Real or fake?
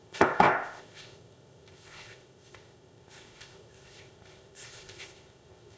fake